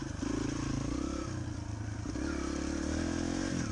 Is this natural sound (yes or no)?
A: yes